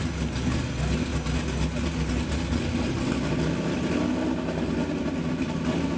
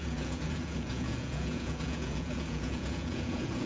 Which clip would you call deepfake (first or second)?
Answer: second